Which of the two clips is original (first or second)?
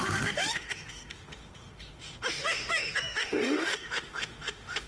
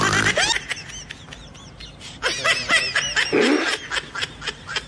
second